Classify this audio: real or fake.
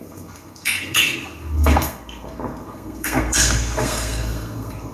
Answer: fake